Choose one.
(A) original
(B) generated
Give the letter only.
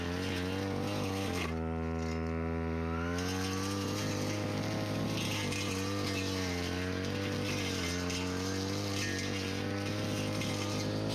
A